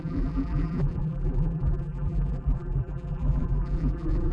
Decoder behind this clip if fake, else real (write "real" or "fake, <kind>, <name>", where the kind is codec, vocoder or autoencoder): fake, vocoder, BigVGAN v2